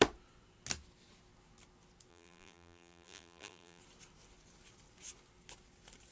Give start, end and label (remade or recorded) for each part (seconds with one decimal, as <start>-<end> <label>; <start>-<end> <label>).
0.0-2.1 recorded; 2.1-3.8 remade; 3.8-6.1 recorded